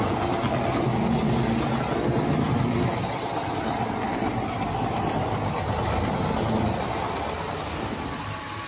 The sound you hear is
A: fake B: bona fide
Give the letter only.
B